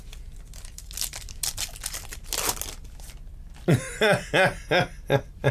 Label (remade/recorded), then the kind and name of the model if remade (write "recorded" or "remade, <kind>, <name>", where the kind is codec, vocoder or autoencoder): recorded